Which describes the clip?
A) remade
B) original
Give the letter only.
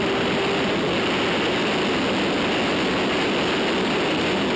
B